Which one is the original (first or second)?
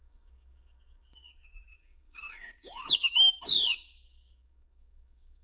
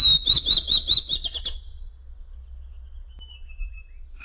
second